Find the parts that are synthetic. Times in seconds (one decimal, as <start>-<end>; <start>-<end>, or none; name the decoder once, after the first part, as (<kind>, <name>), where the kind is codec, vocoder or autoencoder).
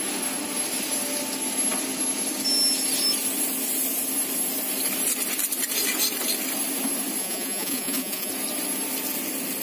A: 7.2-8.3 (vocoder, Vocos)